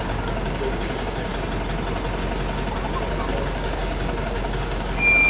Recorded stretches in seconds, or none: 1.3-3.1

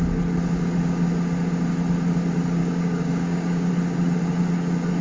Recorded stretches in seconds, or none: 0.0-2.6; 3.7-5.0

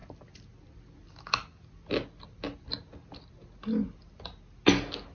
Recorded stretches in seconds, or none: 0.0-5.1

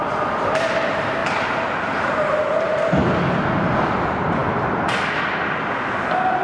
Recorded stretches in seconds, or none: 0.0-6.4